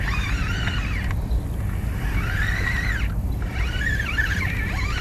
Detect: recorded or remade recorded